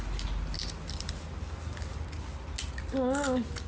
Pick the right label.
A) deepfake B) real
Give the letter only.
B